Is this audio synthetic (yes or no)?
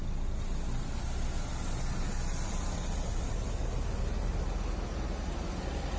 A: no